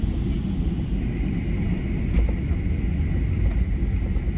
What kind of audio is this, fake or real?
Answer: real